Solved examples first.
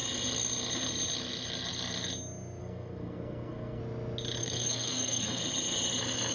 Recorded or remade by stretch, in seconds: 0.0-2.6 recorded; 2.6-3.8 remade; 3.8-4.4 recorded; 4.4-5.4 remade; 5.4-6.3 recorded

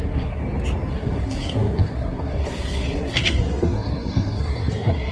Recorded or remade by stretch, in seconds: 0.0-0.4 remade; 0.4-0.9 recorded; 0.9-5.1 remade

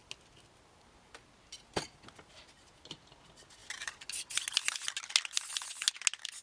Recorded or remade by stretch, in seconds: 0.0-6.4 recorded

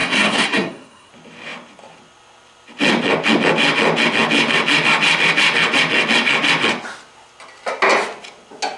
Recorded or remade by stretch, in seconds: 0.0-1.1 remade; 1.1-8.8 recorded